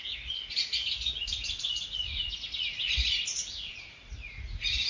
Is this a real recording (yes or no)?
no